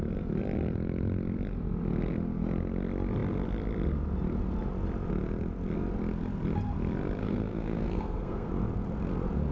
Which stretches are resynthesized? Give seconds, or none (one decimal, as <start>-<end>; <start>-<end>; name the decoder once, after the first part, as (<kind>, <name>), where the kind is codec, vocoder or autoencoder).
7.2-8.5 (codec, SNAC)